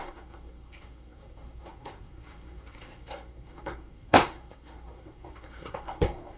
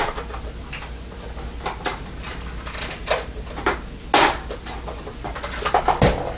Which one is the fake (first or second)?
first